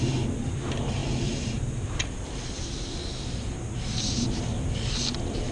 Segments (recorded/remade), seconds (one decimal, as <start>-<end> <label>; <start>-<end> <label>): 0.0-5.5 recorded